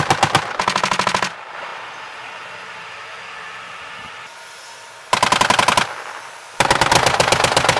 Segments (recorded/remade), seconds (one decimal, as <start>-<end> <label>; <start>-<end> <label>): 0.0-7.8 recorded